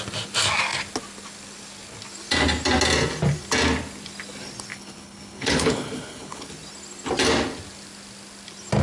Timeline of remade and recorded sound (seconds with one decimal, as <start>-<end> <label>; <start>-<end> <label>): 0.0-4.7 recorded; 4.7-6.5 remade; 6.5-8.8 recorded